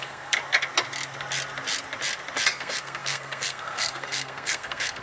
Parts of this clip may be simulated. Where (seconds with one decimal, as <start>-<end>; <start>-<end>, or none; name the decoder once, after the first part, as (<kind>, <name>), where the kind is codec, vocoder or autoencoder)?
0.0-0.4 (codec, SNAC); 2.5-5.0